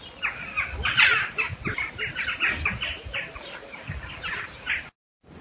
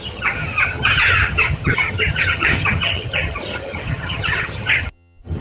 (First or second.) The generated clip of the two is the second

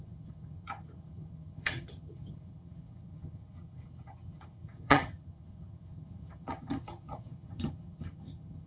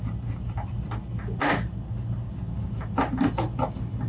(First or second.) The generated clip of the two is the first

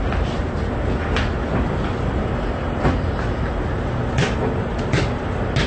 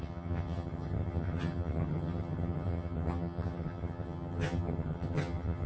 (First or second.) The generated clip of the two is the second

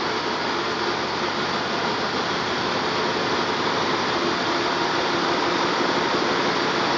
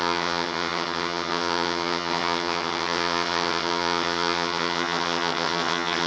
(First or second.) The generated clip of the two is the second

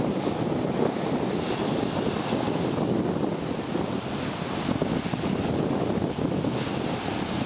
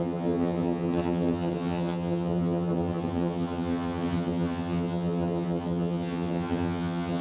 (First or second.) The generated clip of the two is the second